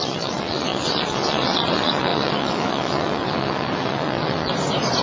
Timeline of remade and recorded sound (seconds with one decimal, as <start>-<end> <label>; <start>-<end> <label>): 0.0-4.5 remade; 4.5-5.0 recorded